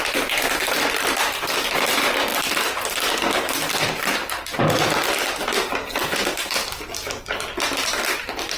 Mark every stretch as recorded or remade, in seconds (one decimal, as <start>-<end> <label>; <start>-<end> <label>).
0.0-8.6 recorded